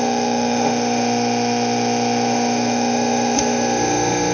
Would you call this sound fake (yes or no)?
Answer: yes